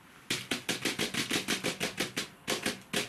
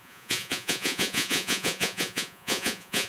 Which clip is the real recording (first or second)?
first